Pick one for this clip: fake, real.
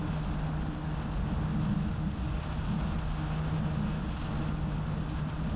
real